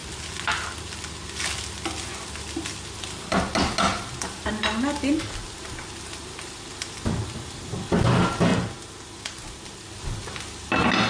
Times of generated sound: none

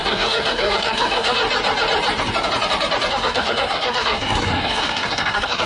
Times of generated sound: 0.0-1.4 (codec, SNAC); 3.1-5.7

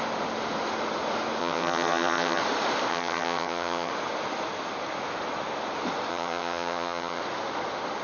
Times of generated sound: 1.4-2.4 (vocoder, HiFi-GAN); 2.9-3.9; 6.1-7.2

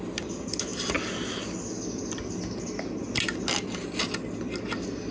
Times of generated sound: none

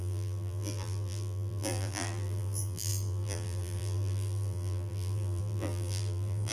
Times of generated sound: 0.0-6.5 (vocoder, BigVGAN v2)

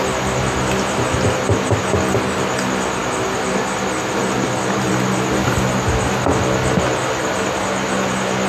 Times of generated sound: none

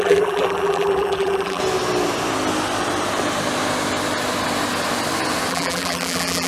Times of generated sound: 0.0-1.6 (vocoder, BigVGAN v2); 5.5-6.5